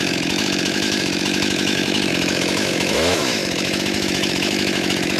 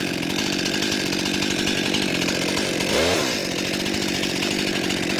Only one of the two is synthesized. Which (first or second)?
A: first